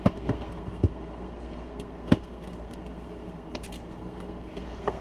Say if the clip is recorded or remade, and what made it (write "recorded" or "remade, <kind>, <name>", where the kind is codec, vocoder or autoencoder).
remade, codec, SNAC